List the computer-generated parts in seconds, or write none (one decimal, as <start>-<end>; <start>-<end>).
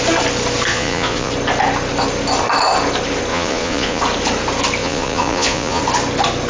0.7-1.3; 3.3-4.0; 4.8-5.8